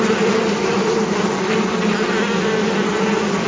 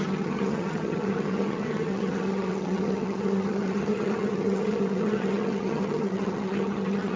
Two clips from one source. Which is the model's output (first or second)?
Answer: second